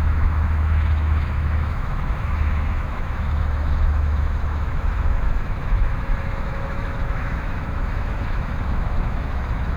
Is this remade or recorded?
remade